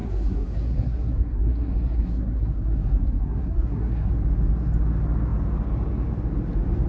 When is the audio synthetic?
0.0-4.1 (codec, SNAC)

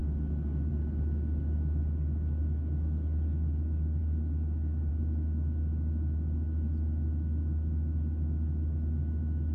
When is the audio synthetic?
none

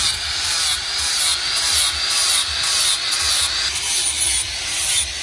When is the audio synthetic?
none

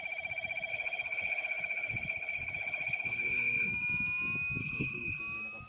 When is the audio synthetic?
0.7-3.7 (codec, HILCodec); 4.6-5.2

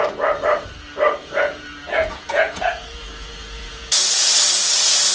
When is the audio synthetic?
1.2-4.3 (vocoder, Vocos)

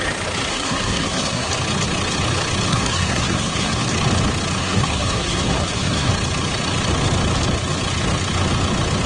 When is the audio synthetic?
0.5-1.5 (codec, SNAC); 2.7-3.8; 4.6-6.1